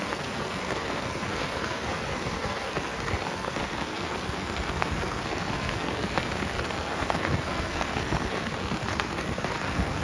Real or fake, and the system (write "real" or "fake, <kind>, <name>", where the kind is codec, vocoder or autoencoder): fake, codec, SNAC